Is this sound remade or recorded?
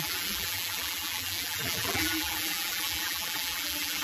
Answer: remade